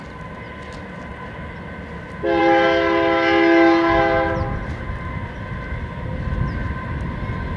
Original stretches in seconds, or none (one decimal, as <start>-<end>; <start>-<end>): 0.0-7.6